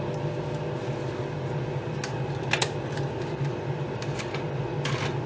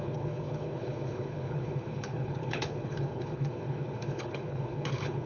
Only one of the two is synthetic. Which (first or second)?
second